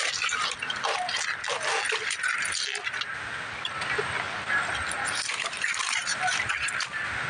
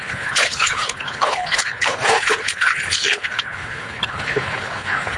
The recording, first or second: first